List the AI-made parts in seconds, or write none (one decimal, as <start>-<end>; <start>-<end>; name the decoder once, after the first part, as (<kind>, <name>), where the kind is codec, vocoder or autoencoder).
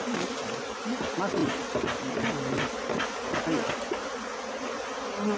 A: none